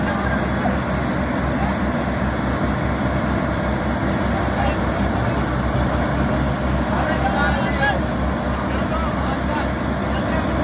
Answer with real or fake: real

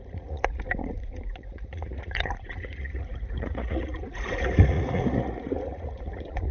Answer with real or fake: fake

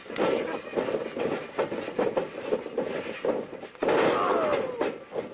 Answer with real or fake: real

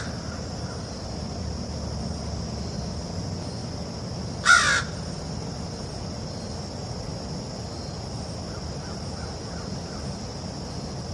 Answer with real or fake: real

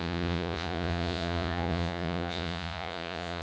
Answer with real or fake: fake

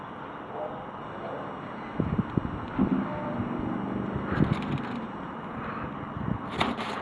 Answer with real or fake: real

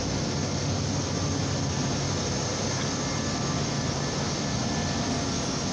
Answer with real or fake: real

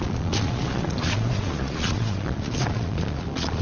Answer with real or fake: fake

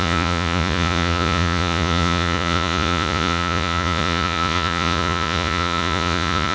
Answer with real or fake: fake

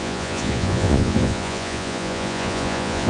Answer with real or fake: fake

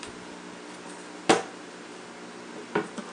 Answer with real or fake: real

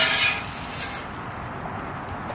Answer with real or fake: real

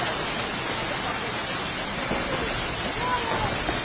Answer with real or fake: real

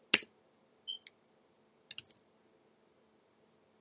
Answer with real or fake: real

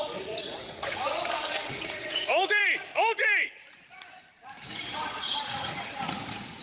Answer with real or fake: fake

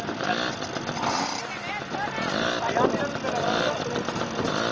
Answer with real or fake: real